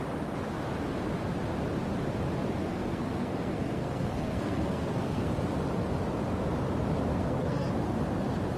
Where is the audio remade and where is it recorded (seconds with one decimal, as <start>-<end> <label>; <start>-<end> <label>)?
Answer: 0.0-2.6 recorded; 2.6-5.3 remade; 5.3-7.1 recorded; 7.1-7.7 remade; 7.7-8.6 recorded